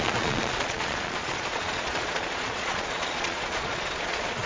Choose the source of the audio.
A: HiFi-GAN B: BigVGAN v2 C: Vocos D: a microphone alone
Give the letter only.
C